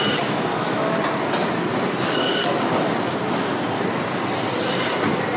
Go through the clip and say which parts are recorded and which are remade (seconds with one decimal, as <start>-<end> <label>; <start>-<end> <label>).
0.0-0.5 recorded; 0.5-1.0 remade; 1.0-5.4 recorded